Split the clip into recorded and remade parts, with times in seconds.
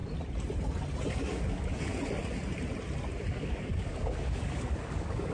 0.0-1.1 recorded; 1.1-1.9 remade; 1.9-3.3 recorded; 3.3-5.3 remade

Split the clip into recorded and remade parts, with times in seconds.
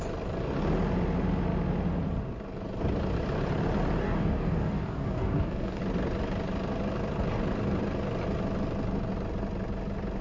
0.0-4.0 recorded; 4.0-5.8 remade; 5.8-10.2 recorded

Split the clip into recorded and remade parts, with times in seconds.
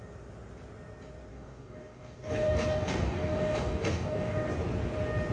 0.0-1.3 recorded; 1.3-4.5 remade; 4.5-5.3 recorded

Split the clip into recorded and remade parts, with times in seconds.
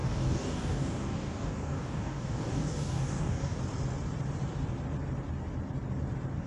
0.0-3.6 remade; 3.6-6.5 recorded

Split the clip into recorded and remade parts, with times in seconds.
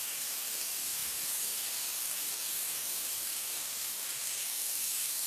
0.0-5.3 remade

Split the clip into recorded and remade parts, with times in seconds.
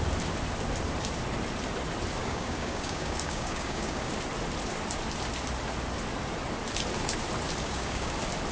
0.0-2.2 recorded; 2.2-4.1 remade; 4.1-7.6 recorded; 7.6-8.1 remade; 8.1-8.5 recorded